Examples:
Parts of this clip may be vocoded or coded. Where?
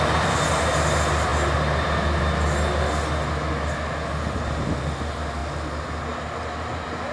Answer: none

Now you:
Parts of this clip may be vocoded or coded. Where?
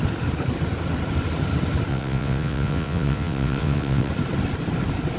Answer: 1.9-4.1 (vocoder, WaveNeXt)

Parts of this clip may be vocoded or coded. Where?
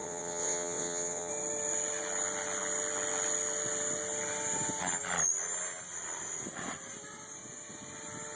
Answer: 0.0-1.3 (vocoder, WaveNeXt)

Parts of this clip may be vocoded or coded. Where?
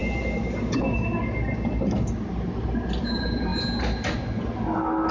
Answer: none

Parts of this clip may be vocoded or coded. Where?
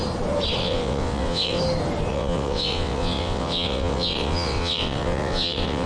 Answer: 0.6-1.6 (vocoder, WaveNeXt); 2.1-5.9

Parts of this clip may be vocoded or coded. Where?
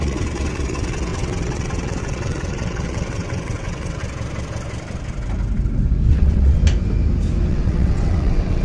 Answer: 0.0-4.0 (vocoder, WaveNeXt); 6.1-6.6; 7.5-8.6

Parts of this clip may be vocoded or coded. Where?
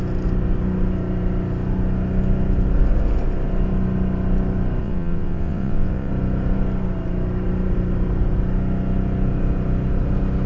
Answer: 4.8-6.1 (vocoder, WaveNeXt)